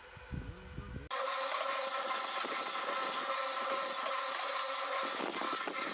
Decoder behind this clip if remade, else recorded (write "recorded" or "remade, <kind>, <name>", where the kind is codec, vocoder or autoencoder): recorded